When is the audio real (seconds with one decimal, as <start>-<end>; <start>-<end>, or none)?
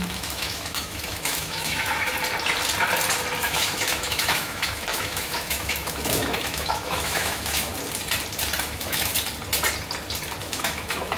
2.1-3.4; 7.7-8.6; 9.1-10.4